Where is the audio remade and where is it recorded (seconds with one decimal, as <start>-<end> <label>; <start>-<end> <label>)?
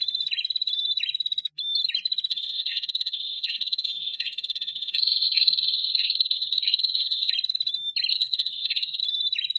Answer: 0.0-2.3 recorded; 2.3-7.3 remade; 7.3-8.1 recorded; 8.1-9.0 remade; 9.0-9.6 recorded